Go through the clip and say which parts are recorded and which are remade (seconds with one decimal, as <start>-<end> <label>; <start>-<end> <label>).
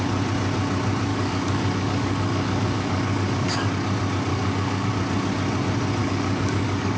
0.0-1.1 recorded; 1.1-3.7 remade; 3.7-4.3 recorded; 4.3-4.9 remade; 4.9-6.0 recorded; 6.0-7.0 remade